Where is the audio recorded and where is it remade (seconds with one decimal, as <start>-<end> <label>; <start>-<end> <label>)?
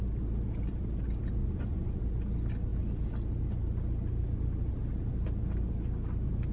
0.0-1.4 recorded; 1.4-2.0 remade; 2.0-6.5 recorded